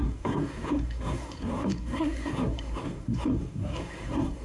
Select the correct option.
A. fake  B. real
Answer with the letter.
A